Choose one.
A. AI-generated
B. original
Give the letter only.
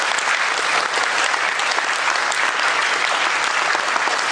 B